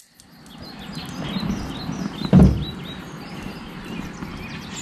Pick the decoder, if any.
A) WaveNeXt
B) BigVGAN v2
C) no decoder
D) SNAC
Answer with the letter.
C